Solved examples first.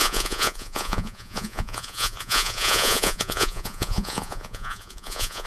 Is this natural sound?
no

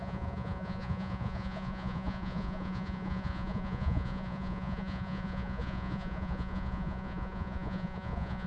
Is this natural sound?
no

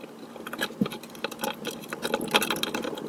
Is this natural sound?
yes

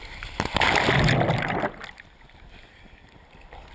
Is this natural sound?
yes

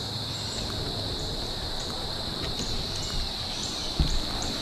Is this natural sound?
no